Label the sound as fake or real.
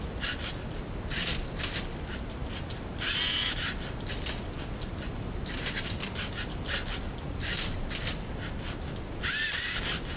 real